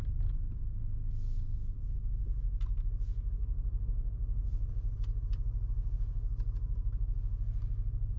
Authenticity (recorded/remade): remade